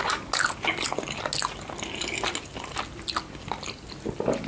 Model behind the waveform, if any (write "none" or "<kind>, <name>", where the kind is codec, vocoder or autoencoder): none